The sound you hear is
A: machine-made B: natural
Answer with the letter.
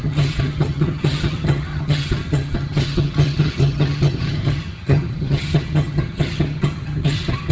A